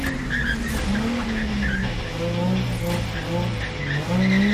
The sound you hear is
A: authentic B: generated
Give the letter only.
A